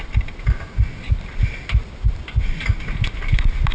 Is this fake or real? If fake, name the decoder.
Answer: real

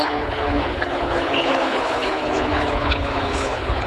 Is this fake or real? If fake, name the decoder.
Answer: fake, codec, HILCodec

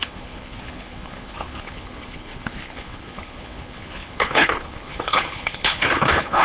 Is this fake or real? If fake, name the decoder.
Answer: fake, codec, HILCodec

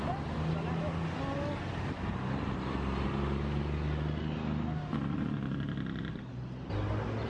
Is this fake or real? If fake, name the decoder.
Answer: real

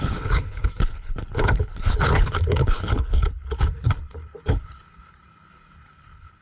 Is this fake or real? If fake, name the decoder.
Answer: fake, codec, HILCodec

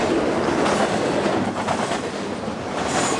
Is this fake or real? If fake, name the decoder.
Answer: real